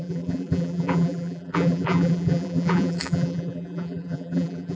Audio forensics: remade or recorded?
remade